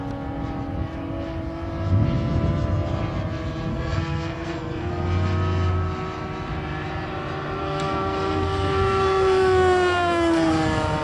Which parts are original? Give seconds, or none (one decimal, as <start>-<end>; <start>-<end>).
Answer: 0.0-3.7; 4.9-7.6; 10.5-11.0